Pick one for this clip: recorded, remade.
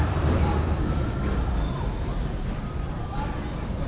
remade